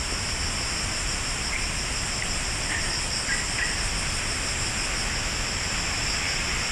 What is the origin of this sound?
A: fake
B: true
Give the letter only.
B